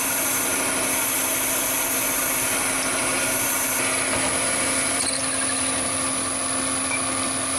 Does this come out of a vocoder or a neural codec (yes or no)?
no